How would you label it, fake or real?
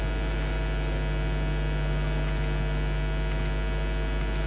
real